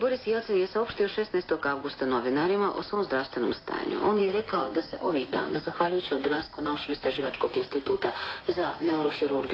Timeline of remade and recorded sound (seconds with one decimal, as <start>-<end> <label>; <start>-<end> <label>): 0.0-4.2 recorded; 4.2-9.5 remade